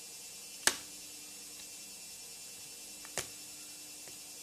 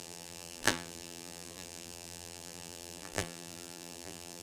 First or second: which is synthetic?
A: second